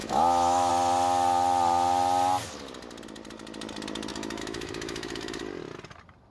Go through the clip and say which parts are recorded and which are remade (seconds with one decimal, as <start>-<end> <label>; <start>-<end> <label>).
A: 0.0-0.7 remade; 0.7-4.1 recorded; 4.1-5.4 remade; 5.4-6.3 recorded